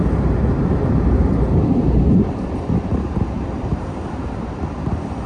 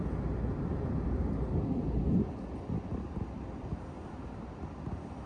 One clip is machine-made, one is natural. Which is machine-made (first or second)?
first